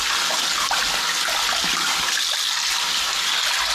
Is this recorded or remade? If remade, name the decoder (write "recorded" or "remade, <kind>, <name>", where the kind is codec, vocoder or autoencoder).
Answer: recorded